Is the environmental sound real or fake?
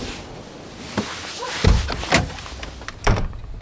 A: real